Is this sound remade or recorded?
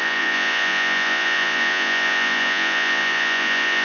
remade